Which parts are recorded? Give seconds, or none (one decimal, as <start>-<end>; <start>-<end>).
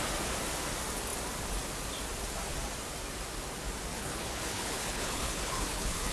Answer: 0.0-3.9